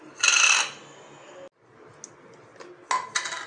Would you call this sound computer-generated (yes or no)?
no